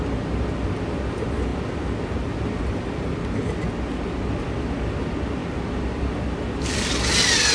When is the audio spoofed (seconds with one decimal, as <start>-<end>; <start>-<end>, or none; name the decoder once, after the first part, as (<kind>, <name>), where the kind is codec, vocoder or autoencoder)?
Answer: none